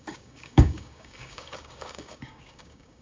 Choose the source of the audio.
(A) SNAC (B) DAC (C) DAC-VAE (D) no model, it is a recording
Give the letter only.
B